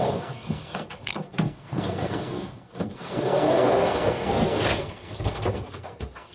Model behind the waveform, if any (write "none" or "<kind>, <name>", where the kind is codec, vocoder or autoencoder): codec, SNAC